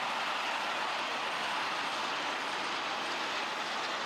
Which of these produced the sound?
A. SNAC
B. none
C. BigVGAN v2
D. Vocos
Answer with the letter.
B